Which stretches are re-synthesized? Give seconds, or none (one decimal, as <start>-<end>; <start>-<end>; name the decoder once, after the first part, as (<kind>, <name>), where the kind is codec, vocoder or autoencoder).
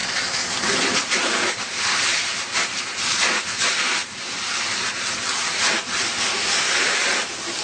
none